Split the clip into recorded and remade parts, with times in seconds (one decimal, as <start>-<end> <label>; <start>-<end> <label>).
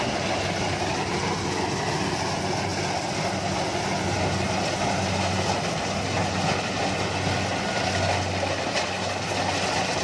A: 0.0-10.0 recorded